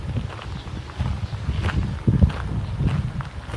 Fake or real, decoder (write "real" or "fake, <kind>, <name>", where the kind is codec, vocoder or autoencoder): real